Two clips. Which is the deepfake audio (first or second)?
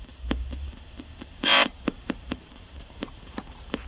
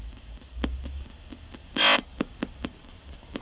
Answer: first